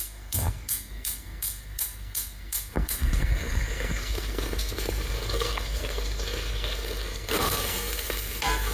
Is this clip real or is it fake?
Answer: fake